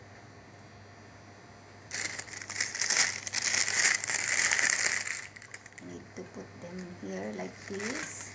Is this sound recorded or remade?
recorded